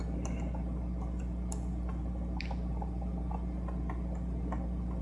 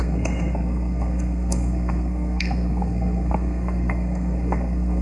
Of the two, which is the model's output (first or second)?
second